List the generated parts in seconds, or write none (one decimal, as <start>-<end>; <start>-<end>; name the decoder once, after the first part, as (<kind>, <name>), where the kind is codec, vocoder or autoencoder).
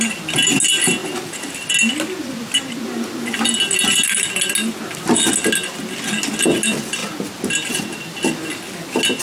none